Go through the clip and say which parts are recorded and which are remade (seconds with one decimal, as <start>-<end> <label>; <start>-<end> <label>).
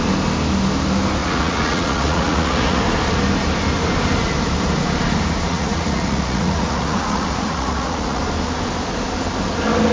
0.0-1.2 recorded; 1.2-2.8 remade; 2.8-5.5 recorded; 5.5-8.2 remade; 8.2-9.9 recorded